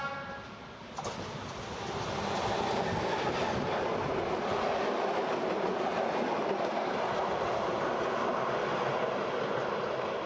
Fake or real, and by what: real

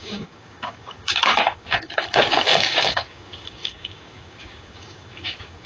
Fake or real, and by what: fake, codec, DAC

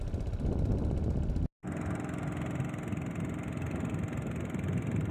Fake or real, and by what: real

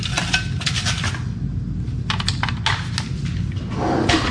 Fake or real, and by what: real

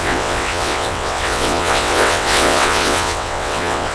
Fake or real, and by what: fake, vocoder, WaveNeXt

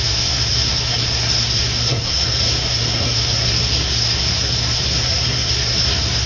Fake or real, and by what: fake, codec, SNAC